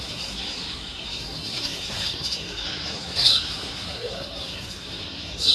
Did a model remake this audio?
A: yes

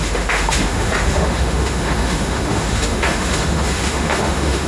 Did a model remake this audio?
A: yes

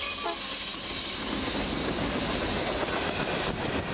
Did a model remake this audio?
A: no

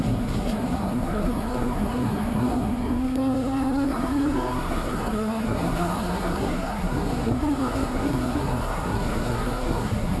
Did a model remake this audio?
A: yes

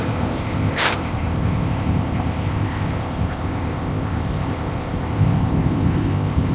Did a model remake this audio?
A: yes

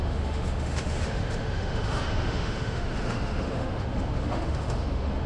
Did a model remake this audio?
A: yes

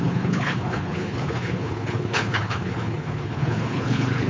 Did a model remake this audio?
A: yes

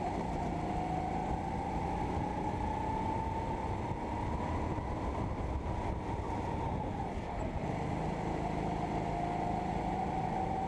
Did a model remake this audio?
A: no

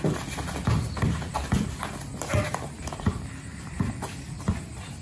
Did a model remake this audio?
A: no